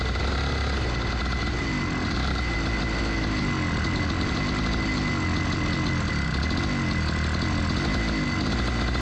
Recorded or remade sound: recorded